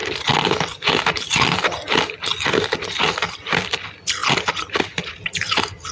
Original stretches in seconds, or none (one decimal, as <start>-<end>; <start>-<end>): 0.0-5.9